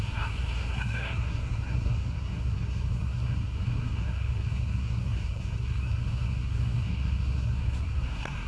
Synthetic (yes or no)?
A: yes